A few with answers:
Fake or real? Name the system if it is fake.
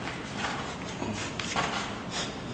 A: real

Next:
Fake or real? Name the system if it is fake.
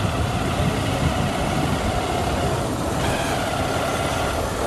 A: real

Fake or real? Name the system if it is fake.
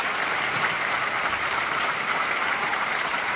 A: fake, vocoder, BigVGAN v2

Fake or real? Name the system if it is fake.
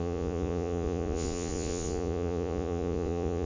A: fake, vocoder, Vocos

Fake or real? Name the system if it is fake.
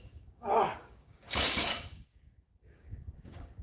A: fake, codec, DAC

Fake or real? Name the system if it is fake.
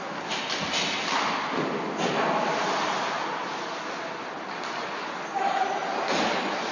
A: real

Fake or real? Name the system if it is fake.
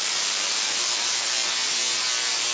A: real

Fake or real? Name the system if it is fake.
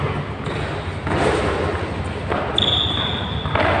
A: real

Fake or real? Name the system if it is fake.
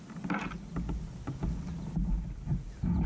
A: real